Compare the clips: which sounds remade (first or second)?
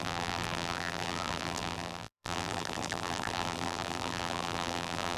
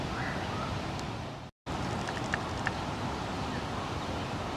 first